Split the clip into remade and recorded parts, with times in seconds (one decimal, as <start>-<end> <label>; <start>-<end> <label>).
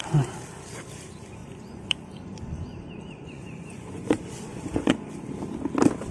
0.0-1.4 recorded; 1.4-5.1 remade; 5.1-6.1 recorded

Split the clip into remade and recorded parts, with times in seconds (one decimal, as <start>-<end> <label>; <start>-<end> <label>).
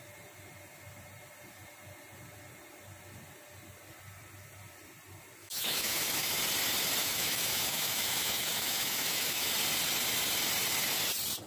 0.0-5.4 recorded; 5.4-6.4 remade; 6.4-7.0 recorded; 7.0-9.5 remade; 9.5-11.5 recorded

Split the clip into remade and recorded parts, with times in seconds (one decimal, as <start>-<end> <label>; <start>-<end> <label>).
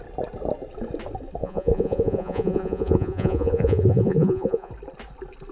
0.0-1.4 recorded; 1.4-4.7 remade; 4.7-5.5 recorded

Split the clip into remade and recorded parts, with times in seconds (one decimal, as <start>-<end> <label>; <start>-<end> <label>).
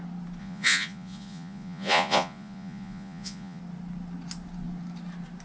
0.0-0.4 recorded; 0.4-3.6 remade; 3.6-5.4 recorded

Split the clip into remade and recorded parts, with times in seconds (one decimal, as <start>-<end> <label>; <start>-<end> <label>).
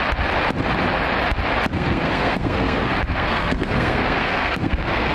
0.0-1.7 recorded; 1.7-5.1 remade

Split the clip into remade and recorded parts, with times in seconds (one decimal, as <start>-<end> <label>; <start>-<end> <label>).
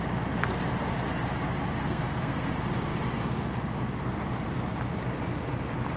0.0-1.8 recorded; 1.8-2.5 remade; 2.5-6.0 recorded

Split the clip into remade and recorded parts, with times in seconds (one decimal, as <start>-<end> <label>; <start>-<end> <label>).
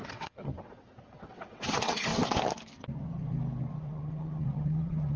0.0-2.1 remade; 2.1-3.8 recorded; 3.8-5.2 remade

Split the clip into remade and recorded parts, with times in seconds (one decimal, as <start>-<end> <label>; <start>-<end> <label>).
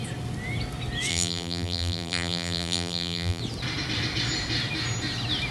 0.0-1.1 recorded; 1.1-3.4 remade; 3.4-5.5 recorded